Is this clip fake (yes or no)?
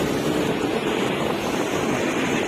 no